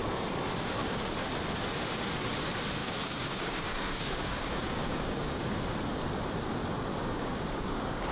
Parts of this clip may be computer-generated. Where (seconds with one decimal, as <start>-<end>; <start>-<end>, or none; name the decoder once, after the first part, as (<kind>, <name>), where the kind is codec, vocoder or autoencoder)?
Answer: 2.8-5.6 (codec, DAC); 6.9-8.1